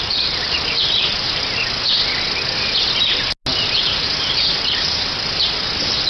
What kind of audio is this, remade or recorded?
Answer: recorded